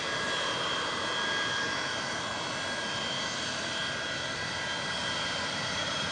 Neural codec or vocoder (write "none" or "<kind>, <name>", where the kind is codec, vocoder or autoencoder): vocoder, BigVGAN v2